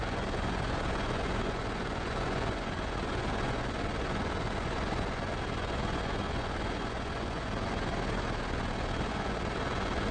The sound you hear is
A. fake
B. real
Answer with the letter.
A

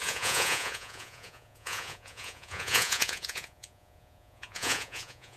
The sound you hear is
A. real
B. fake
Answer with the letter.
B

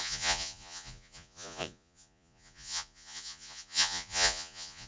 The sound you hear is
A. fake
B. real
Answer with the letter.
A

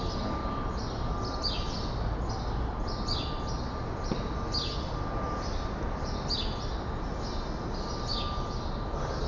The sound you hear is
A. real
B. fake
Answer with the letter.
A